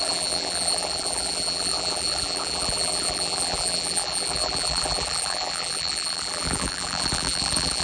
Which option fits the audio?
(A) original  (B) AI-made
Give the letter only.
B